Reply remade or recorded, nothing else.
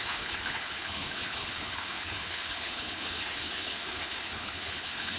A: remade